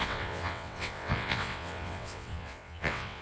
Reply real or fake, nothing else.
fake